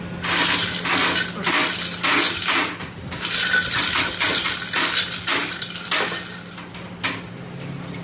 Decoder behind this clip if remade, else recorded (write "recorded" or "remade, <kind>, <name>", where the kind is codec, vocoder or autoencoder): recorded